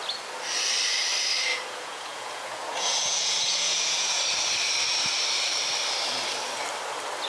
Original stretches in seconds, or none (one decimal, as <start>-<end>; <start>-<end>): 0.0-1.5; 4.2-7.3